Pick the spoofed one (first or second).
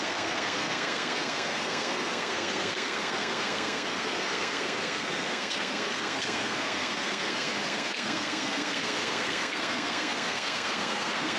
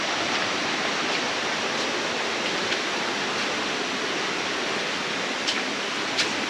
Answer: first